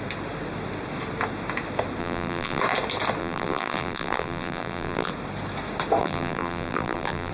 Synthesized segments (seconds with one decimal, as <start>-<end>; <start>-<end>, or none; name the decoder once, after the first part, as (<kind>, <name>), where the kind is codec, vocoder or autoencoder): 2.0-2.6 (vocoder, BigVGAN v2); 3.2-5.1; 6.0-7.3